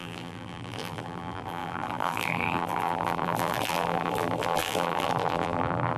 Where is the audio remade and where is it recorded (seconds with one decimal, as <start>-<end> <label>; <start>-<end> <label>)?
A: 0.0-6.0 remade